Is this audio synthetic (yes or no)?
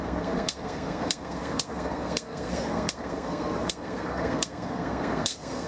yes